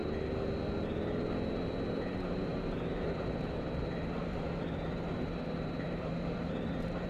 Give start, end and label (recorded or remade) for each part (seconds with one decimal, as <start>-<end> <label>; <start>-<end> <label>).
0.0-1.9 recorded; 1.9-7.1 remade